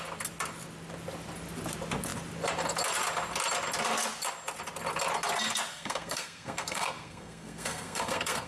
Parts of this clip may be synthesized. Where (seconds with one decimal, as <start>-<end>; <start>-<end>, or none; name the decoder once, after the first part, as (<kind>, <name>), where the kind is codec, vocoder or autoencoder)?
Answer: 5.7-8.5 (codec, SNAC)